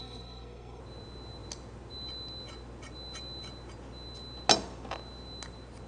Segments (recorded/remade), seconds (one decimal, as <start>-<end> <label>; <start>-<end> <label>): 0.0-0.8 remade; 0.8-5.9 recorded